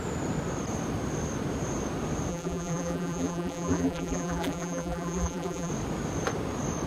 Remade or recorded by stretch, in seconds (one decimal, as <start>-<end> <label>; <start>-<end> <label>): 0.0-2.3 recorded; 2.3-5.7 remade; 5.7-6.9 recorded